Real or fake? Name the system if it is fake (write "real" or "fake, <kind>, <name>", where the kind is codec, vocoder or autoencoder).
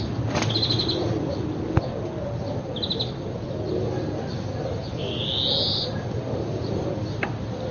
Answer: real